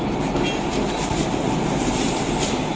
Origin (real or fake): real